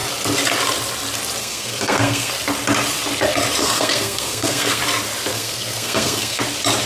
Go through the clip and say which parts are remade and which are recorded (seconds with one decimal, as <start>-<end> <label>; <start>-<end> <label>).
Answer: 0.0-1.4 recorded; 1.4-2.3 remade; 2.3-3.6 recorded; 3.6-4.8 remade; 4.8-5.3 recorded; 5.3-6.4 remade; 6.4-6.9 recorded